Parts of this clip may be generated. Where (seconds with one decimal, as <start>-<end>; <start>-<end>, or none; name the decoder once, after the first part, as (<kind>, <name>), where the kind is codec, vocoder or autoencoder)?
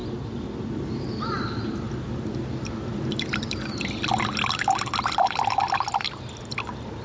none